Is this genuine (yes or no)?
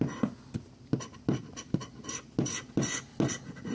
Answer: yes